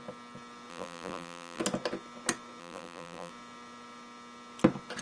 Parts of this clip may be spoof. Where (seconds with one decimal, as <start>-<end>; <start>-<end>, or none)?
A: 0.7-1.6; 2.6-3.3